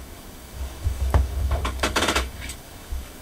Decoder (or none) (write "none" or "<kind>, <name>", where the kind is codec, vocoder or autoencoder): codec, DAC